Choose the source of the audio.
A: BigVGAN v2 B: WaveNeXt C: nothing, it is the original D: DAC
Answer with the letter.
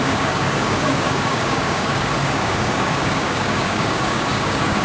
D